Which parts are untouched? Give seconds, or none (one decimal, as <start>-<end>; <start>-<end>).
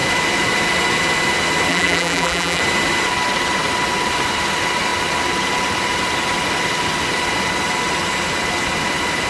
0.0-1.7; 2.6-9.3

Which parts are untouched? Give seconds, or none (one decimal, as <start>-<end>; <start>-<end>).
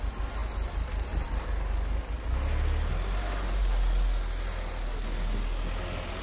0.0-6.2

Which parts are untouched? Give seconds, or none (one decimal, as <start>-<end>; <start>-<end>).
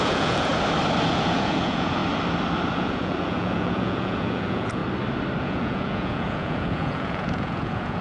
0.5-1.1; 2.0-2.7; 4.8-5.4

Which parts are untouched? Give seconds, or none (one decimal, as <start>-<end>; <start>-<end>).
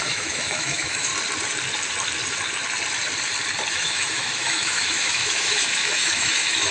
1.1-3.7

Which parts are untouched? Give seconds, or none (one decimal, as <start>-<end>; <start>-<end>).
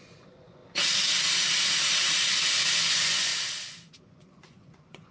0.6-2.8; 3.3-4.0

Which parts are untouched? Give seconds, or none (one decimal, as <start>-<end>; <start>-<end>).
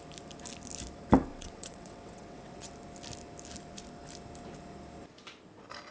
0.0-1.3; 2.7-5.9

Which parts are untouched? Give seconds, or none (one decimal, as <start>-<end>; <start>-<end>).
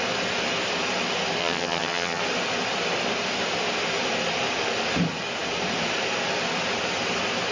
0.0-1.4; 2.2-7.5